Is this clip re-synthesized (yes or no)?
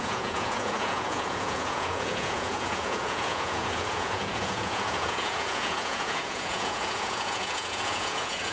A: yes